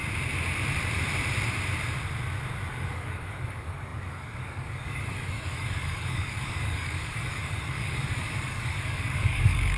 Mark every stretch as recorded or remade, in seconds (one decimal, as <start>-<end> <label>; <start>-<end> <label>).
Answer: 0.0-2.7 recorded; 2.7-9.8 remade

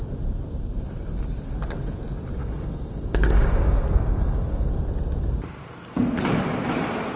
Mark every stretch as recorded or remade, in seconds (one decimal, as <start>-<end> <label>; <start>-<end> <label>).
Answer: 0.0-2.4 recorded; 2.4-4.8 remade; 4.8-7.2 recorded